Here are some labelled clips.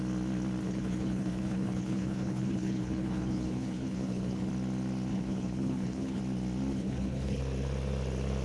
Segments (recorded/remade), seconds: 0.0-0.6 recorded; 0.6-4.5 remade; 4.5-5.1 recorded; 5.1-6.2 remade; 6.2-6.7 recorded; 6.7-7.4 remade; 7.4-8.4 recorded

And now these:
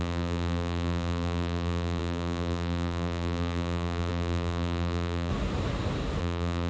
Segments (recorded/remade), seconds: 0.0-5.3 remade; 5.3-6.2 recorded; 6.2-6.7 remade

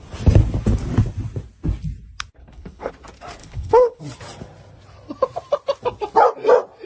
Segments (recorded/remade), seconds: 0.0-2.4 recorded; 2.4-2.9 remade; 2.9-3.4 recorded; 3.4-4.0 remade; 4.0-6.9 recorded

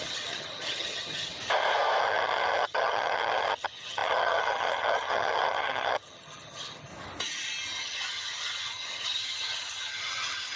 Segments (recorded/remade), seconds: 0.0-1.3 remade; 1.3-2.0 recorded; 2.0-6.9 remade; 6.9-7.8 recorded; 7.8-10.6 remade